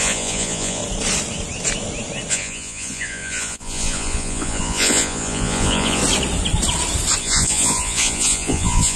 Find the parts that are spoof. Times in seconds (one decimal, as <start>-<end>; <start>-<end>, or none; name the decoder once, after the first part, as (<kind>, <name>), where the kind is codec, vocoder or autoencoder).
0.0-0.8 (vocoder, Vocos); 2.3-6.0; 7.2-9.0